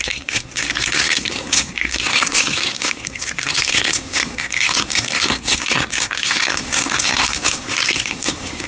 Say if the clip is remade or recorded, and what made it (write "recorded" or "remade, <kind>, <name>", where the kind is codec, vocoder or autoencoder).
remade, codec, SNAC